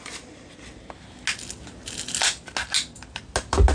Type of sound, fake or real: real